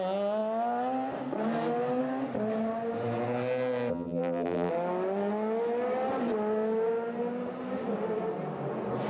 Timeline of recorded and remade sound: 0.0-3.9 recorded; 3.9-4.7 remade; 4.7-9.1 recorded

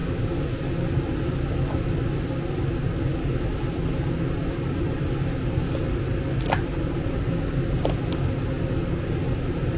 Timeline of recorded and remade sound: 0.0-9.8 recorded